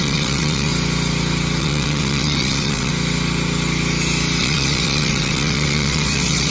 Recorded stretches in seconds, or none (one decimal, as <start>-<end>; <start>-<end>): 0.7-1.6; 2.9-4.4